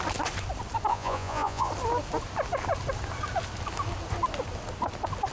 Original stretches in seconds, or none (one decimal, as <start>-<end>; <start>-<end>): 0.0-0.9; 1.7-5.3